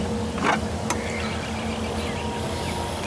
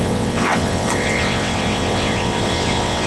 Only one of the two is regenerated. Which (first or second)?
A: second